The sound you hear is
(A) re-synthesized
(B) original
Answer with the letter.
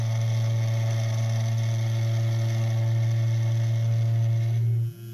B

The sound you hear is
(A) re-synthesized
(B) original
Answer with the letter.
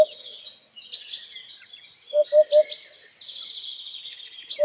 B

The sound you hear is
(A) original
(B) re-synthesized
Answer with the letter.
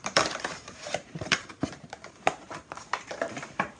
B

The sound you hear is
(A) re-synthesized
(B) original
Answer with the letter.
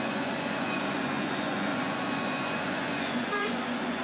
A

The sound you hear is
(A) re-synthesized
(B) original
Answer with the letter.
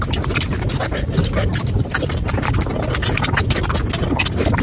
B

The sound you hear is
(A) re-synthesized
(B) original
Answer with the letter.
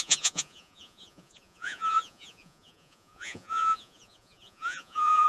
A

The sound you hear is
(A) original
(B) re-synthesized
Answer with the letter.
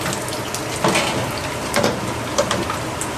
A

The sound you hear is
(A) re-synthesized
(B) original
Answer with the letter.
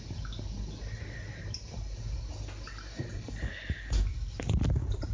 B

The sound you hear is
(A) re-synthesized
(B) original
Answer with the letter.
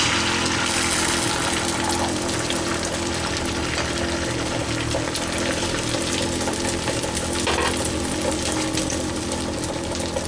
B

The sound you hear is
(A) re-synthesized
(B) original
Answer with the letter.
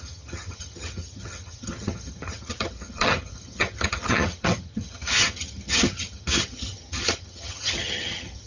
A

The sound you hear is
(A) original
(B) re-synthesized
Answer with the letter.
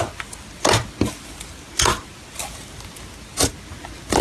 A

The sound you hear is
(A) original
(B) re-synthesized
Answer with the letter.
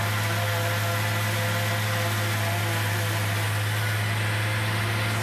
A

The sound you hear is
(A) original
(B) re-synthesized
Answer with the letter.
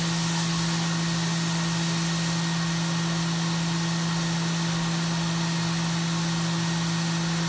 A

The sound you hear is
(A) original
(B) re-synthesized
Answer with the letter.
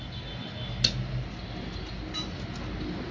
A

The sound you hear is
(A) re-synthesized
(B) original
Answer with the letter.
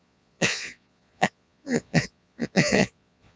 A